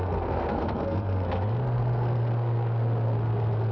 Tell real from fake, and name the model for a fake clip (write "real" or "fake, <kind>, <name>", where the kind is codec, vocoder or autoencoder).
fake, codec, SNAC